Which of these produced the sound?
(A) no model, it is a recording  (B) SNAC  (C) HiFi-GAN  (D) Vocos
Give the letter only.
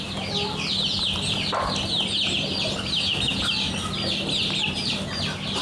A